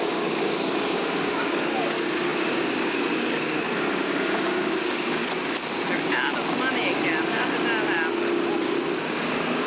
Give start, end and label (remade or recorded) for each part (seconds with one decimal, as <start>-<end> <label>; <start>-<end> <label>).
0.0-5.2 remade; 5.2-8.9 recorded; 8.9-9.7 remade